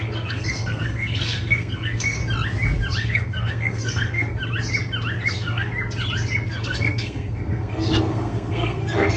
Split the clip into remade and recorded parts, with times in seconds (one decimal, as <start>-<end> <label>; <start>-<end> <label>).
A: 0.0-2.2 remade; 2.2-3.0 recorded; 3.0-4.4 remade; 4.4-5.3 recorded; 5.3-5.7 remade; 5.7-6.5 recorded; 6.5-9.2 remade